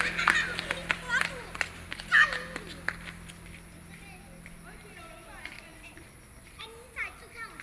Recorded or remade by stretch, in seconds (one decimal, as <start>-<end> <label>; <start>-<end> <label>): 0.0-7.6 recorded